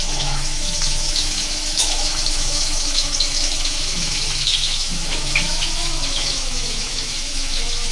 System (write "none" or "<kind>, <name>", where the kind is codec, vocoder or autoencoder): autoencoder, DAC-VAE